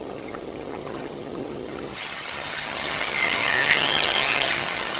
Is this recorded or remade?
remade